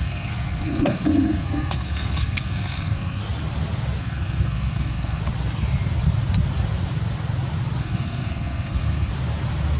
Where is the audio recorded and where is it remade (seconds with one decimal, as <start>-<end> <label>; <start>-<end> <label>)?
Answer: 0.0-3.2 remade; 3.2-4.0 recorded; 4.0-5.2 remade; 5.2-7.8 recorded; 7.8-9.1 remade; 9.1-9.8 recorded